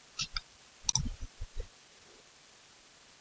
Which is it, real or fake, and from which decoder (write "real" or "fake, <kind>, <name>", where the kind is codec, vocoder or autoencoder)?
real